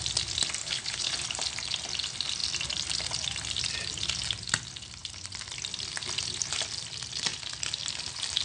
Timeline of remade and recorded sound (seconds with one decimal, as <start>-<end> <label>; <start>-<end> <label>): 0.0-0.6 recorded; 0.6-1.1 remade; 1.1-8.4 recorded